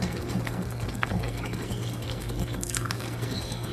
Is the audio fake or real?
fake